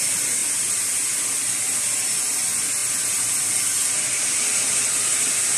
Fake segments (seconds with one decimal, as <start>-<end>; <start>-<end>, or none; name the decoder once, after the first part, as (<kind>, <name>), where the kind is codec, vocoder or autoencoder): none